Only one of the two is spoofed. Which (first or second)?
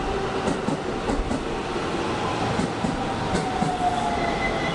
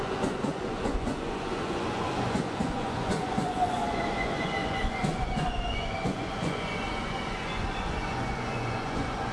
second